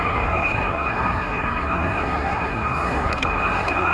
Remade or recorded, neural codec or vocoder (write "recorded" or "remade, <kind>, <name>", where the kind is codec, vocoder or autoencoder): remade, codec, SNAC